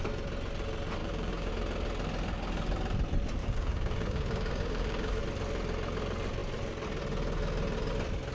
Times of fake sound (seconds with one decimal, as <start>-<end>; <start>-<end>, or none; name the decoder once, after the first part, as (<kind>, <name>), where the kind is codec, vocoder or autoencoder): 1.0-1.5 (codec, DAC); 3.4-5.2

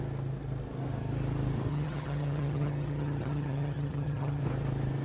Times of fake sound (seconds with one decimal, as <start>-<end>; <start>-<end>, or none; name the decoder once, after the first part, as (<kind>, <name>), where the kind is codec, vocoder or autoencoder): 1.7-4.4 (vocoder, HiFi-GAN)